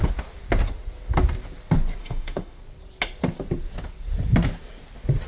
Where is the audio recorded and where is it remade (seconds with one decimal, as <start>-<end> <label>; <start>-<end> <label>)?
0.0-2.0 recorded; 2.0-2.6 remade; 2.6-5.3 recorded